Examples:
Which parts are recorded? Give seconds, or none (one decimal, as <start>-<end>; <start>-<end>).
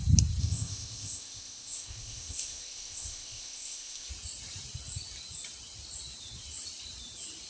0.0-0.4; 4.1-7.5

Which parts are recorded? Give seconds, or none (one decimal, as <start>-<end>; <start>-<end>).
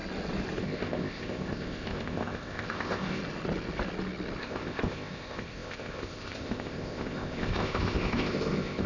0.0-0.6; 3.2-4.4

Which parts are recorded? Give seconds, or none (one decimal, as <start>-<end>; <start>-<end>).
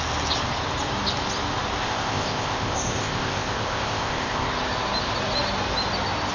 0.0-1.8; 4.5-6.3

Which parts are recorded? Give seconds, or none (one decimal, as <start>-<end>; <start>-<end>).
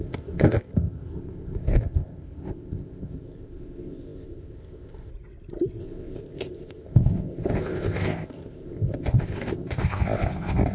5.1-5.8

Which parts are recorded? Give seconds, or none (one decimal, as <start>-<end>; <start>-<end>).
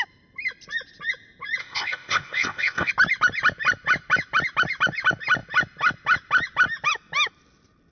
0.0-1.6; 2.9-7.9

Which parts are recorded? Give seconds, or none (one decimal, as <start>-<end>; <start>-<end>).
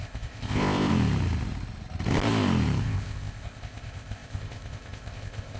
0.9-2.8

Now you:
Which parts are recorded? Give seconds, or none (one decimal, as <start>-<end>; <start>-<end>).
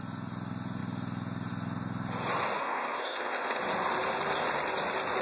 0.0-2.6; 3.6-5.2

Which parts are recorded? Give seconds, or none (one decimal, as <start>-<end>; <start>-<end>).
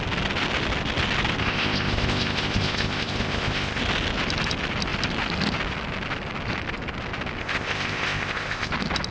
0.0-1.4; 3.8-7.4; 8.7-9.1